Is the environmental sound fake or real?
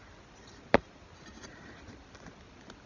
real